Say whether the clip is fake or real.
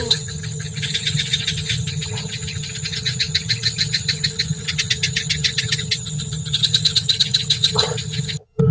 fake